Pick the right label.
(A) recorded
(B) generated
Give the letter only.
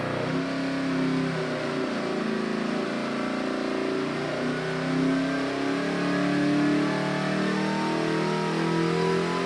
A